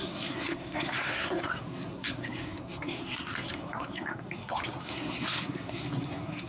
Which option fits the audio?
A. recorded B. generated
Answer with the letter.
B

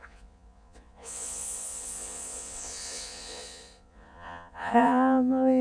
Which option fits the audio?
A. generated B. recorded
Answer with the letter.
A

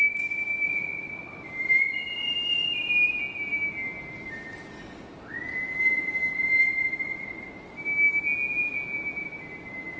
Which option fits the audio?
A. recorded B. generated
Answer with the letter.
A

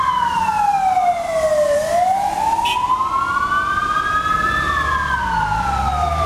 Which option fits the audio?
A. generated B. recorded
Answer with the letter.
B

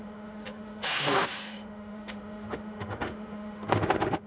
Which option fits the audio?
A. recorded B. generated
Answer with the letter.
B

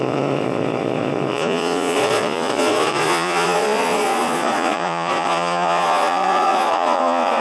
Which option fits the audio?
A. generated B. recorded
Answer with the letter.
A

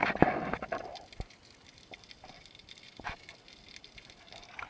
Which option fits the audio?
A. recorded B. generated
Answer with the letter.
A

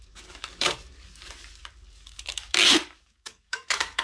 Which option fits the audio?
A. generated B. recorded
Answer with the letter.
A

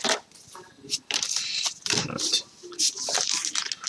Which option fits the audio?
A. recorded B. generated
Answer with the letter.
A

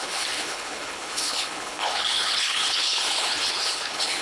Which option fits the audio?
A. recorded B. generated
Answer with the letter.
B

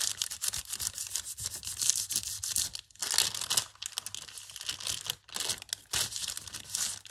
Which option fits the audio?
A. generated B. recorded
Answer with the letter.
B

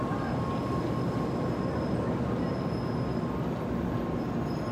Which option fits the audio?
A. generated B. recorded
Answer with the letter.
B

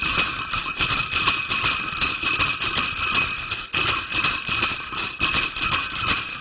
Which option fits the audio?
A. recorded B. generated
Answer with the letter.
A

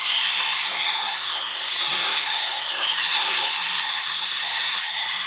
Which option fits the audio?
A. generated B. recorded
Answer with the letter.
A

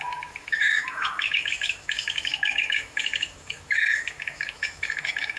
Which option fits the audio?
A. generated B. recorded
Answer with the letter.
A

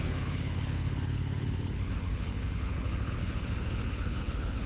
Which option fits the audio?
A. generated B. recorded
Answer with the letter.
A